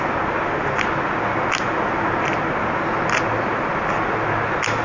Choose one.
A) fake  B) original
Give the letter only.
B